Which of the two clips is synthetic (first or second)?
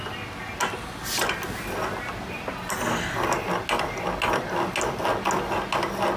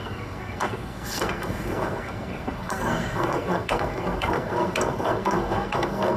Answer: second